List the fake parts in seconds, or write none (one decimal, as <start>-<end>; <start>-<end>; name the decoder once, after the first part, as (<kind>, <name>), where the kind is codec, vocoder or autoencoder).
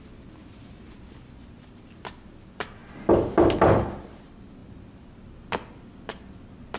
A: none